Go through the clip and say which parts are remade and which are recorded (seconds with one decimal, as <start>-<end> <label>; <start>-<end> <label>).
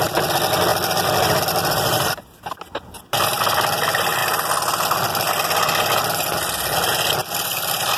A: 0.0-0.7 recorded; 0.7-3.4 remade; 3.4-7.2 recorded; 7.2-8.0 remade